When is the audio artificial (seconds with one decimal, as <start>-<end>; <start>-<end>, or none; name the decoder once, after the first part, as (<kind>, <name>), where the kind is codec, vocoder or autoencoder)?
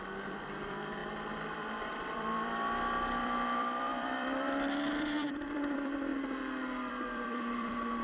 0.0-6.1 (vocoder, BigVGAN v2); 6.9-8.0